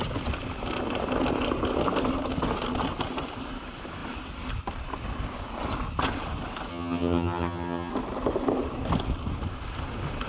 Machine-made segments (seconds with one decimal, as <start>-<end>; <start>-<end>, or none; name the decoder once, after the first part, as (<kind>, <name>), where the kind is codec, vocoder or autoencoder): 6.7-7.9 (vocoder, HiFi-GAN)